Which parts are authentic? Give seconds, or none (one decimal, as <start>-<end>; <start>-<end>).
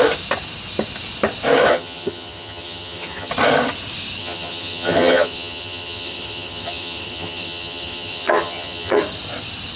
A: 0.0-1.7; 3.3-4.2; 9.0-9.8